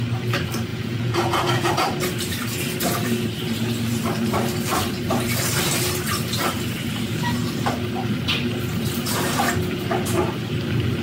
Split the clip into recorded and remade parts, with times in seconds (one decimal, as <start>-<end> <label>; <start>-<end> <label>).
0.0-0.7 recorded; 0.7-1.7 remade; 1.7-11.0 recorded